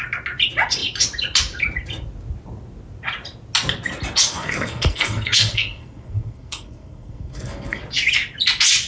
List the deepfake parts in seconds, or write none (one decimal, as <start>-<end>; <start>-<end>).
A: 4.3-7.8

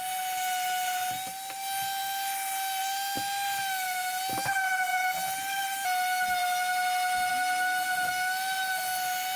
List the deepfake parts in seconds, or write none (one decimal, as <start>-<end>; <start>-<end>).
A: none

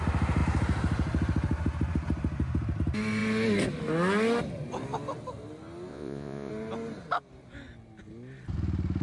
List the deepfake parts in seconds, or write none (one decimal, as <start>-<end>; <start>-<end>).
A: 5.9-6.5

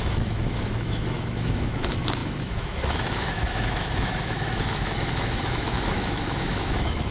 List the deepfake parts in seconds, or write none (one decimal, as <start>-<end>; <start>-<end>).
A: 0.0-7.1

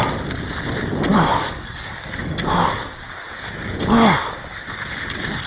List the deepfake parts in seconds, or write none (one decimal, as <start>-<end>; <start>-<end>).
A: 1.1-2.4

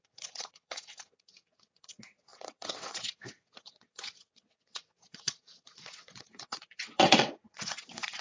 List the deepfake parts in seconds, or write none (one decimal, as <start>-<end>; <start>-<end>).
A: 0.0-8.2